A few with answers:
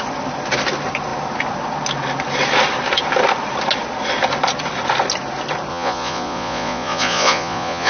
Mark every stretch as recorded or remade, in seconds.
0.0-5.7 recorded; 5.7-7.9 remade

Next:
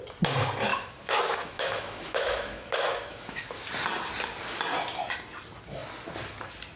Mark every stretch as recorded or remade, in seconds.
0.0-0.7 recorded; 0.7-3.7 remade; 3.7-6.8 recorded

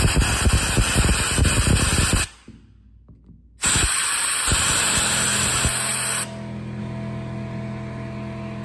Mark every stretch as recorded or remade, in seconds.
0.0-8.6 recorded

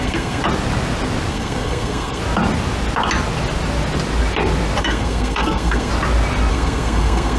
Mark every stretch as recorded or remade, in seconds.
0.0-0.4 remade; 0.4-1.3 recorded; 1.3-2.2 remade; 2.2-4.8 recorded; 4.8-5.9 remade; 5.9-6.5 recorded; 6.5-7.4 remade

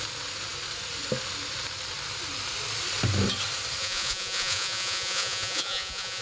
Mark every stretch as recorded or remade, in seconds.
0.0-3.8 recorded; 3.8-6.2 remade

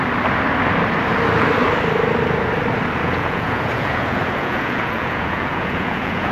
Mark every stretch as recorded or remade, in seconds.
0.0-3.0 recorded; 3.0-6.3 remade

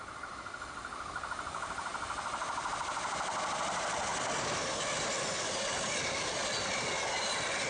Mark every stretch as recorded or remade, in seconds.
0.0-1.9 remade; 1.9-2.7 recorded; 2.7-4.1 remade; 4.1-5.3 recorded; 5.3-6.4 remade; 6.4-7.7 recorded